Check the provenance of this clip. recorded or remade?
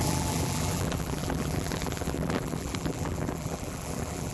remade